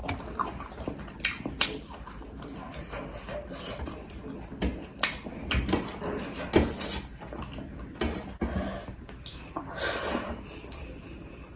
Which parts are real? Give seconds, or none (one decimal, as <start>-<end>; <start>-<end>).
0.0-11.6